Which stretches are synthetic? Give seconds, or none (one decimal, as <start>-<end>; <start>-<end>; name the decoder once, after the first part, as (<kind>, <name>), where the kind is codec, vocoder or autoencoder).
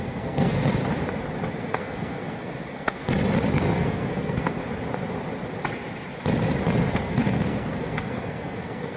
0.0-0.8 (codec, SNAC); 1.6-3.0; 3.5-4.6; 6.9-9.0